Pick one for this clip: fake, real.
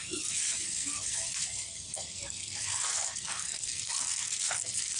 fake